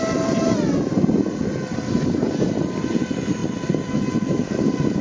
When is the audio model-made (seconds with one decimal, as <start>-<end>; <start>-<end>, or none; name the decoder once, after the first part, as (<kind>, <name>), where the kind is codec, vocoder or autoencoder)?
none